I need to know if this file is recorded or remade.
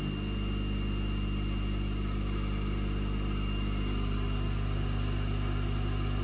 recorded